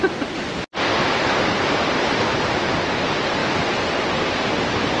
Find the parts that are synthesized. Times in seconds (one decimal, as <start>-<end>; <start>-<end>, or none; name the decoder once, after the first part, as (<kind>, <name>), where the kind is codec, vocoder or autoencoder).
0.9-2.8 (vocoder, BigVGAN v2)